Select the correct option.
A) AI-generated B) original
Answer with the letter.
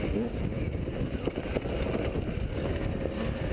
B